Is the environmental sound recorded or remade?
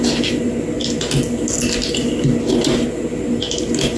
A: recorded